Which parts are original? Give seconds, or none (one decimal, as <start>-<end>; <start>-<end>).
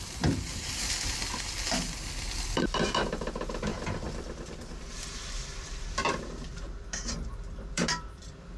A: none